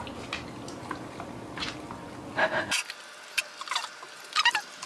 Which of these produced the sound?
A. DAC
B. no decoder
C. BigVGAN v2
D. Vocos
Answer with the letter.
B